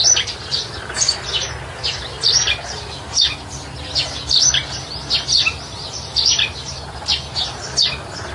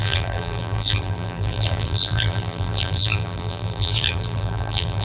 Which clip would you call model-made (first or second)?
second